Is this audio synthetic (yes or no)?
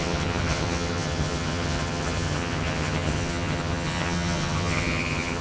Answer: yes